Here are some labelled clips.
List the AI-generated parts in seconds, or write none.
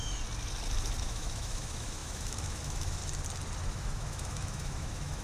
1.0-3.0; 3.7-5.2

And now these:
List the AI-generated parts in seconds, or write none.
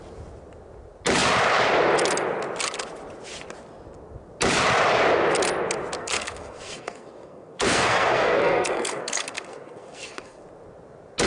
6.0-10.4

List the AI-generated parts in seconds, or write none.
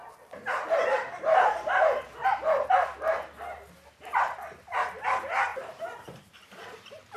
5.5-6.5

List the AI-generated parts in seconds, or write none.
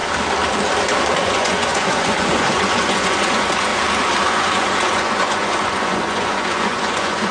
1.2-3.7; 4.3-7.3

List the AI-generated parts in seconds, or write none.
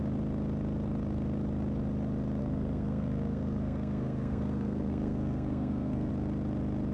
2.4-6.1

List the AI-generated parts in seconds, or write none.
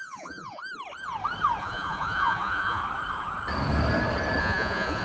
0.0-0.6; 1.6-2.8; 4.4-5.0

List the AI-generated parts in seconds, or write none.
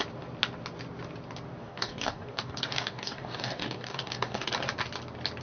1.6-4.5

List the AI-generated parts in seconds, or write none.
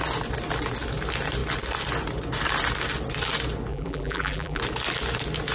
3.7-4.6